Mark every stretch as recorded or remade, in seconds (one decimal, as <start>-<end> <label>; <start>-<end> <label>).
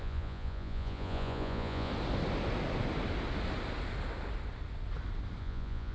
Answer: 0.0-1.9 remade; 1.9-5.4 recorded; 5.4-5.9 remade